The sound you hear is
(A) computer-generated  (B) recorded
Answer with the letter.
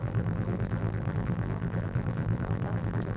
A